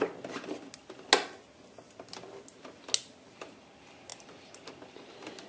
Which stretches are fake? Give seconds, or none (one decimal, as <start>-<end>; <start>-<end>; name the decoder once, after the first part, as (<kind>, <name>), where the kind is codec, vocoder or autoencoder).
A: none